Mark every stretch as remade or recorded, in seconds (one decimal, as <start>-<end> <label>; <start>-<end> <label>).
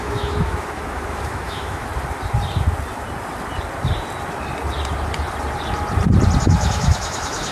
0.0-1.9 remade; 1.9-6.4 recorded; 6.4-7.5 remade